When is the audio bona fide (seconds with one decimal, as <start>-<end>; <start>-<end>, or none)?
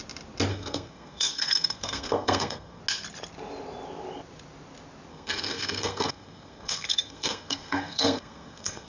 0.0-0.5; 2.8-5.1